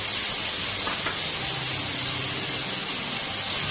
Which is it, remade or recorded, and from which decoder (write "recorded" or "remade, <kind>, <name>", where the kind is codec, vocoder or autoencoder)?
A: recorded